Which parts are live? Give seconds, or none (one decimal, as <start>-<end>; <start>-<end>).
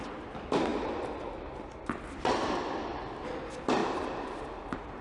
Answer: 0.0-0.7; 1.7-3.8; 4.4-5.0